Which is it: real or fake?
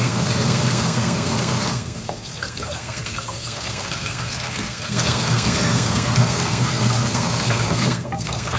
fake